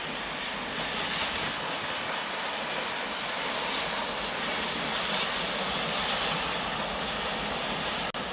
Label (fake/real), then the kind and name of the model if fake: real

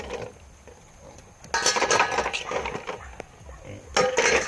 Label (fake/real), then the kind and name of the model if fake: real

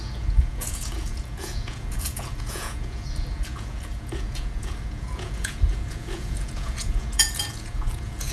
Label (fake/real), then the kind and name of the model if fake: fake, vocoder, Vocos